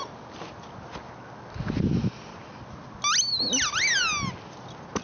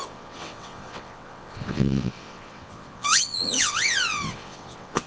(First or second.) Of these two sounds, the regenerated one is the second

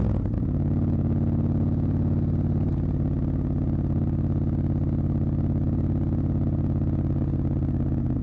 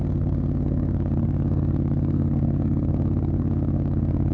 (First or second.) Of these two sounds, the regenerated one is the second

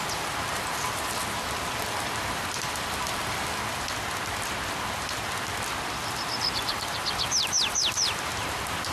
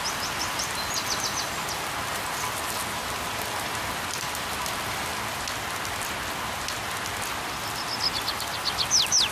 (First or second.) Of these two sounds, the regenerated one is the first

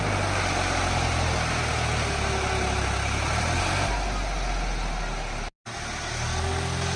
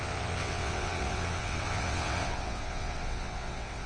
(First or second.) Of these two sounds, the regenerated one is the second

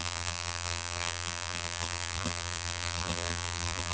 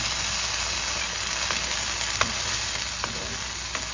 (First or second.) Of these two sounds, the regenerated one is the first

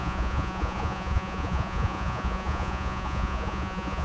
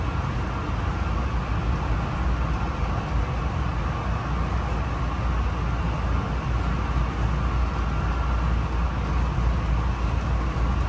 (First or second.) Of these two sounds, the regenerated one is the first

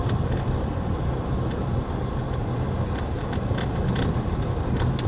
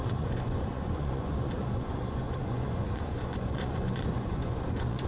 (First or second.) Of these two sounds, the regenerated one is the second